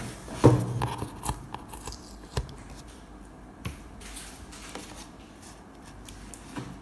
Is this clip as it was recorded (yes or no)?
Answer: yes